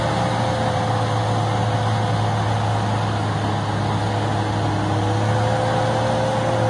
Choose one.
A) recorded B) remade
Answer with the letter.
A